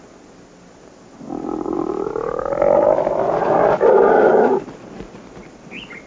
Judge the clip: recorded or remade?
remade